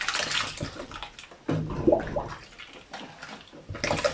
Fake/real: real